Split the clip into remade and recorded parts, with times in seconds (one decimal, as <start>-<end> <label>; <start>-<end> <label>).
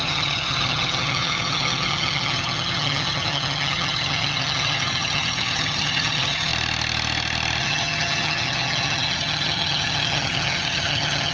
0.0-6.5 remade; 6.5-7.6 recorded; 7.6-11.3 remade